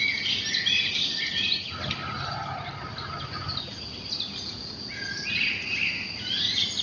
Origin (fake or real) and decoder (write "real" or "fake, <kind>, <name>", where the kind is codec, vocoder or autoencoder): real